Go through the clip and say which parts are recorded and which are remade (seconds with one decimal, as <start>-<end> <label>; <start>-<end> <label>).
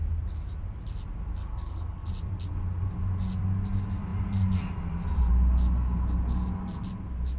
0.0-1.4 recorded; 1.4-2.1 remade; 2.1-7.4 recorded